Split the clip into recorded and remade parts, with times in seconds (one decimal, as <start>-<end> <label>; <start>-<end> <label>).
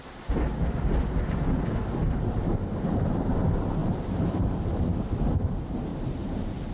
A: 0.0-2.0 recorded; 2.0-3.1 remade; 3.1-3.8 recorded; 3.8-4.6 remade; 4.6-5.9 recorded; 5.9-6.7 remade